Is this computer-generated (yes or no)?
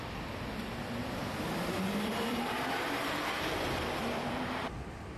yes